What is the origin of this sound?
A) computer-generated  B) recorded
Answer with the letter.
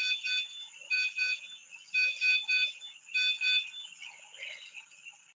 B